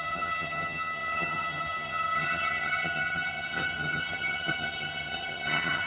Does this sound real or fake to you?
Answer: fake